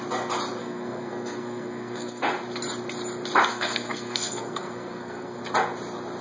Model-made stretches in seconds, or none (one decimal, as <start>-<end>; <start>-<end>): 0.6-2.2; 3.5-5.4